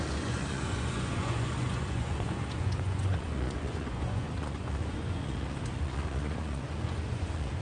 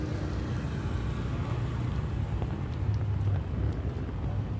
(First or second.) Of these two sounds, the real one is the second